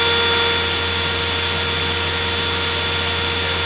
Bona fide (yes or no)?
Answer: yes